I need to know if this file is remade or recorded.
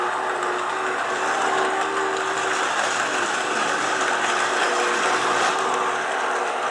recorded